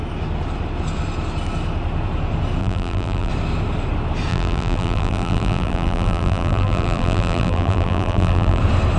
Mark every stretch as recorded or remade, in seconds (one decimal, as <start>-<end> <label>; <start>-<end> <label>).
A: 0.0-2.6 recorded; 2.6-3.3 remade; 3.3-4.3 recorded; 4.3-8.6 remade; 8.6-9.0 recorded